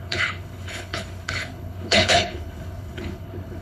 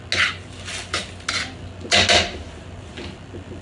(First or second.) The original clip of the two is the second